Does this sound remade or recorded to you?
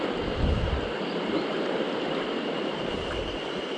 remade